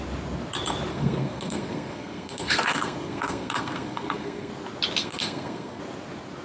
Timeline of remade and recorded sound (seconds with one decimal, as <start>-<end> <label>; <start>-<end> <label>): 0.0-0.9 recorded; 0.9-4.5 remade; 4.5-5.0 recorded; 5.0-5.8 remade; 5.8-6.4 recorded